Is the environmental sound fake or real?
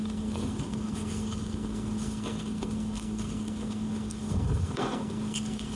fake